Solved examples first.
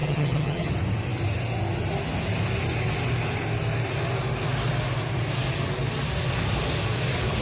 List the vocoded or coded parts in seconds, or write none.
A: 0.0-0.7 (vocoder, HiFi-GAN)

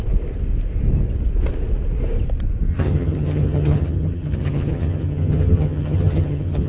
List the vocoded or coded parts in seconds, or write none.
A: 2.7-6.7 (vocoder, HiFi-GAN)

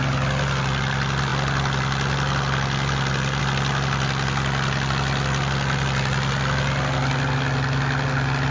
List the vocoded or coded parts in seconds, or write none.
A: none

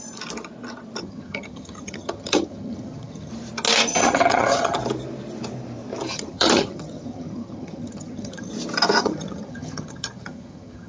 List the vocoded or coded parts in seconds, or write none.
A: 1.0-3.3 (vocoder, HiFi-GAN); 3.9-4.8; 6.1-8.5; 9.0-10.9

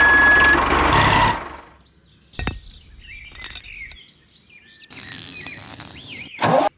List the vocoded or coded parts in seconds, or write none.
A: none

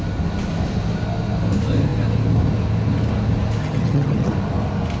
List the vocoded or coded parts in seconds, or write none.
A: 3.6-4.3 (vocoder, HiFi-GAN)

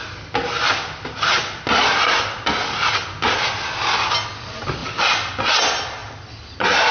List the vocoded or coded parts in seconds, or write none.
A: none

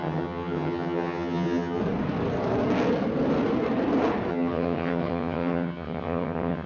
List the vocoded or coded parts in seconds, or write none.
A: 0.0-1.8 (vocoder, HiFi-GAN); 4.3-6.7